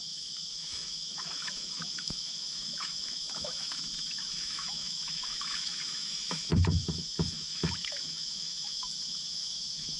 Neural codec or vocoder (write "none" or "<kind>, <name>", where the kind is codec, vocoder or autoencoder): autoencoder, DAC-VAE